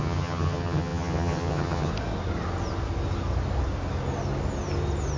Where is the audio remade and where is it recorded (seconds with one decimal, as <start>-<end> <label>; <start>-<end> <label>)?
0.0-1.9 remade; 1.9-5.2 recorded